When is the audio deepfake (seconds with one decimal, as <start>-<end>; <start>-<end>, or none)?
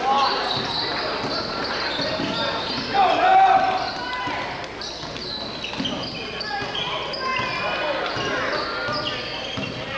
none